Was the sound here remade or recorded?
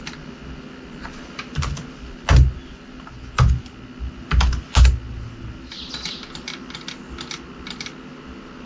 recorded